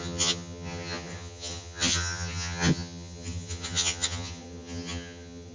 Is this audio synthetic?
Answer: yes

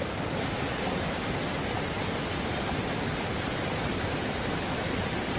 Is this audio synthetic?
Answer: no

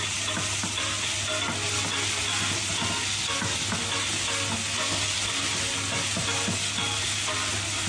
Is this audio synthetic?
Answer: no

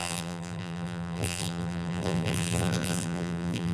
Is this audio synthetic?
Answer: yes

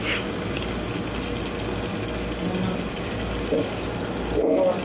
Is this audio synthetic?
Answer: no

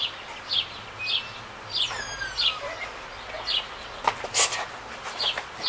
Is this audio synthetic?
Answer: no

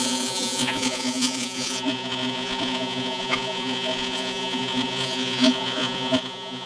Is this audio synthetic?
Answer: yes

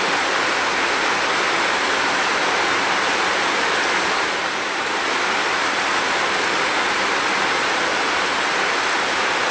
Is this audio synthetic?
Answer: no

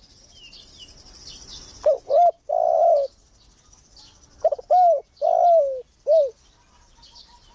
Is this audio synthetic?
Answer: no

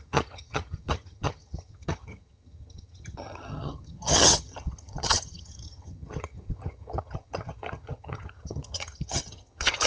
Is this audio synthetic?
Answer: yes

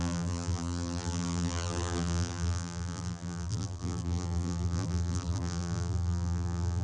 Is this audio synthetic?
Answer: yes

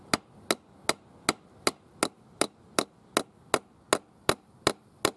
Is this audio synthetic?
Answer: no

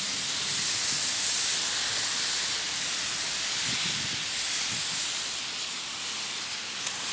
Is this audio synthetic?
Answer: no